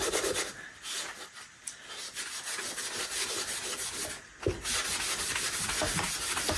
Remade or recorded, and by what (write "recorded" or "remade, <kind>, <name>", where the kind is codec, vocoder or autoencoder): recorded